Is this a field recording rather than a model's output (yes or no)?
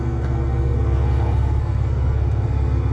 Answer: no